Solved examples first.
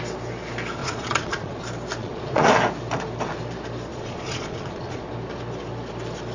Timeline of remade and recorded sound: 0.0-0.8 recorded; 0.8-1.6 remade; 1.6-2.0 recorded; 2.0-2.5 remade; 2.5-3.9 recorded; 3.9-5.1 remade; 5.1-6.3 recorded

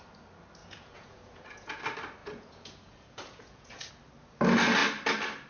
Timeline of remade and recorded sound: 0.0-0.6 recorded; 0.6-1.8 remade; 1.8-2.2 recorded; 2.2-3.9 remade; 3.9-5.5 recorded

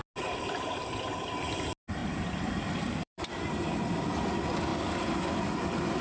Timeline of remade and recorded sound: 0.0-2.0 recorded; 2.0-4.0 remade; 4.0-4.7 recorded; 4.7-5.5 remade; 5.5-6.0 recorded

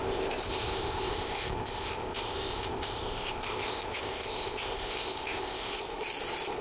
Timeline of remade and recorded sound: 0.0-5.7 remade; 5.7-6.6 recorded